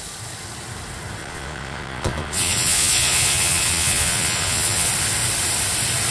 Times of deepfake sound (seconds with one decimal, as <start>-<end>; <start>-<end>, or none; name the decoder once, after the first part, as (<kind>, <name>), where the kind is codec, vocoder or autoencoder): 1.2-4.9 (vocoder, Vocos)